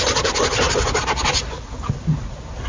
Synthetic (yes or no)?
no